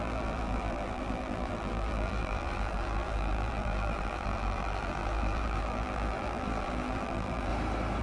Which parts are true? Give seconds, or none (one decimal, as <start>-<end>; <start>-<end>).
7.5-8.0